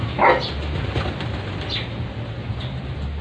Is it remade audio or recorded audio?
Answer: recorded